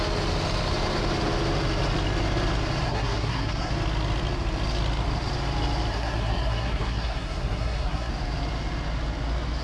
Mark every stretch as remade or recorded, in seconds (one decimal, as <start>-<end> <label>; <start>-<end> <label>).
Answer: 0.0-2.8 recorded; 2.8-3.7 remade; 3.7-5.9 recorded; 5.9-8.1 remade; 8.1-9.6 recorded